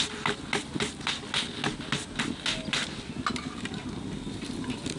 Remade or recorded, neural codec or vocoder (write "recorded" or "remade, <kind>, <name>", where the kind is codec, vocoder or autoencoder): recorded